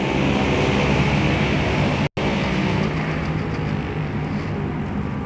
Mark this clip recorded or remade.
recorded